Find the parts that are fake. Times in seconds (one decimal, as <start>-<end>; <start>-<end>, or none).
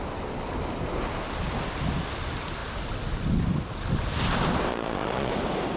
4.7-5.3